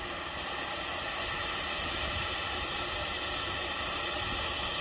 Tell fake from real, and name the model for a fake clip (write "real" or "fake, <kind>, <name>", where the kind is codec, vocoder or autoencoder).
real